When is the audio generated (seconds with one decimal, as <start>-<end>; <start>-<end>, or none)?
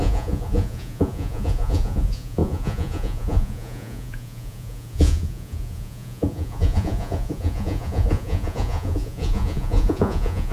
0.0-10.5